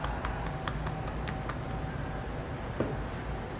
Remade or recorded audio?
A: recorded